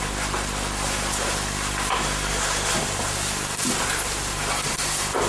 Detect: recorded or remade recorded